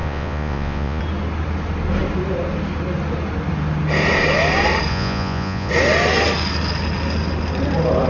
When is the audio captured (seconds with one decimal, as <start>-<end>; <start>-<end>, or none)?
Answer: 1.0-4.9; 5.7-8.1